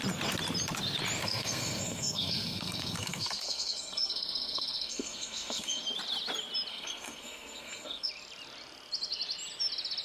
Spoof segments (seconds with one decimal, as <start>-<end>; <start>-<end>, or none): 1.2-5.8; 6.7-8.1

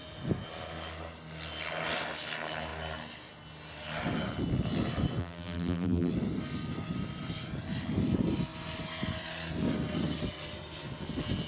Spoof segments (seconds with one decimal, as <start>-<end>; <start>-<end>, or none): 5.2-6.1

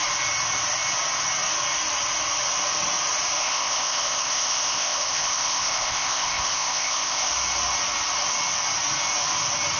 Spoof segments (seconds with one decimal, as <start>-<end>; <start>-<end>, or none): 3.4-7.3

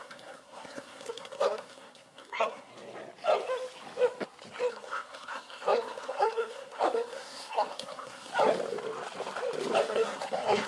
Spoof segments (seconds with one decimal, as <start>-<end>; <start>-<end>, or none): 0.0-2.7; 4.7-8.3; 9.8-10.7

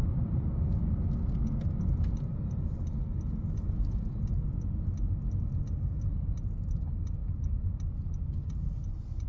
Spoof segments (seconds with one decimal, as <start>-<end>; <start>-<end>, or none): none

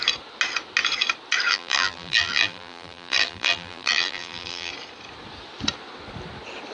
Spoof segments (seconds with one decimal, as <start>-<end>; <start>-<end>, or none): 1.5-4.7

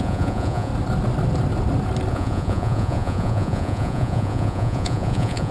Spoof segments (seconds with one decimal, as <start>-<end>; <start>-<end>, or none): 0.0-0.7; 2.1-5.5

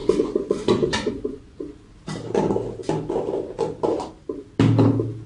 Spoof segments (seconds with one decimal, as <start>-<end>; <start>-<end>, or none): 0.0-1.9